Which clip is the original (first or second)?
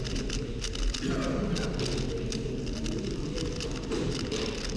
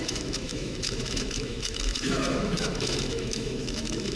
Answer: first